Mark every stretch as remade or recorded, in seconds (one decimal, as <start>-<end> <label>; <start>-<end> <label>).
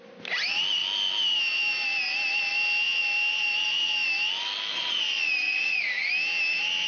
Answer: 0.0-4.7 recorded; 4.7-6.1 remade; 6.1-6.9 recorded